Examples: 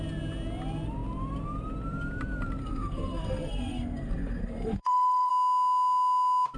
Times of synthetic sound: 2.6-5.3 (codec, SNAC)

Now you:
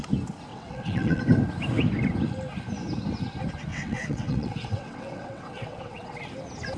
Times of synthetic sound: 0.5-1.2 (vocoder, WaveNeXt); 3.7-6.2

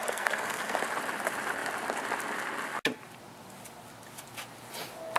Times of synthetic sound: 0.0-0.8 (codec, SNAC)

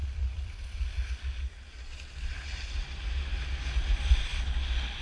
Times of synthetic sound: none

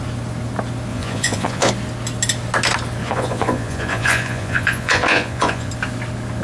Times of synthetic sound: 0.9-1.7 (vocoder, Vocos); 3.0-5.7